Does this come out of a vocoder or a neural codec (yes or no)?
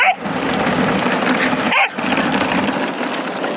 no